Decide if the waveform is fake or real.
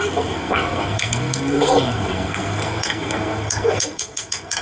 fake